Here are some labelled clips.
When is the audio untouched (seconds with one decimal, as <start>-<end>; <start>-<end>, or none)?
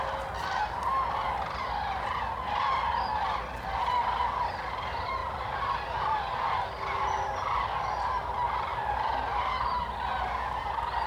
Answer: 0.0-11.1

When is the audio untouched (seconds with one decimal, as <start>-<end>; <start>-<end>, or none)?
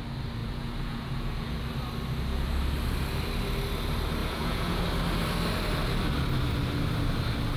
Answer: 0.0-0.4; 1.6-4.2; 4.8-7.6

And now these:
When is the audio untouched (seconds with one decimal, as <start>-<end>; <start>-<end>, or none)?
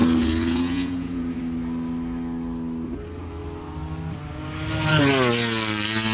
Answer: 1.4-6.1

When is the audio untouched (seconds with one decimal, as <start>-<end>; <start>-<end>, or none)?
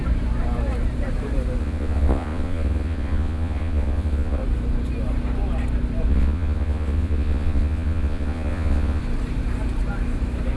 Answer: 0.0-1.6; 4.4-6.1; 9.0-10.6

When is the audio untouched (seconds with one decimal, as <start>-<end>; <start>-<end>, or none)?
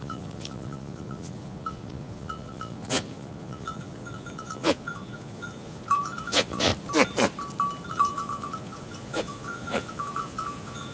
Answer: 6.7-7.9